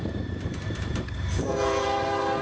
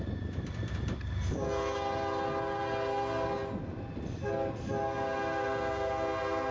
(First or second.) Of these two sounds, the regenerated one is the first